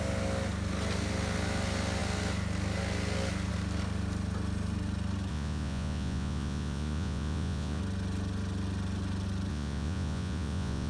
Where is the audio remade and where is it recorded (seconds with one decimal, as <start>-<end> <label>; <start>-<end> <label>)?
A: 0.0-5.3 recorded; 5.3-7.8 remade; 7.8-9.5 recorded; 9.5-10.9 remade